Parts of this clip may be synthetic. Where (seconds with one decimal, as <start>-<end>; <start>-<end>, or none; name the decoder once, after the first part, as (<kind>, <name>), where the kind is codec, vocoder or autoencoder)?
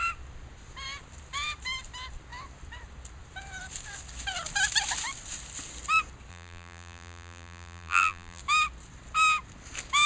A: 6.3-8.4 (vocoder, BigVGAN v2)